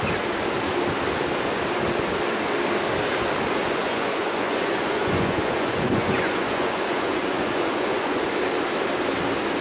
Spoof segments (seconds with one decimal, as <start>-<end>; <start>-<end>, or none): 3.6-8.3

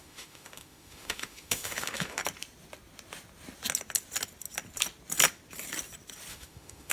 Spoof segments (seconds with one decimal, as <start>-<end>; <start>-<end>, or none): 0.0-2.2; 6.3-6.9

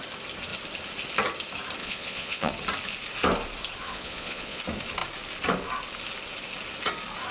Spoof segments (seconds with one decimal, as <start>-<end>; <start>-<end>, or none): 1.8-2.5; 3.8-4.6